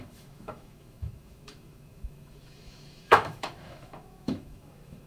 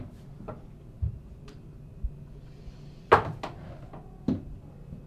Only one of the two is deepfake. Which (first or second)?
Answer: first